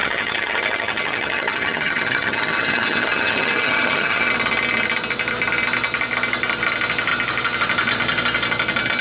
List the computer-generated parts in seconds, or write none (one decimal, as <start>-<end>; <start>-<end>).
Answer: 0.0-4.3